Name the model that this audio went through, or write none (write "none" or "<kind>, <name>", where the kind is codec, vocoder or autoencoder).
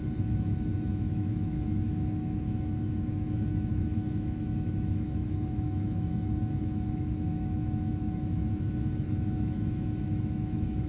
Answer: autoencoder, DAC-VAE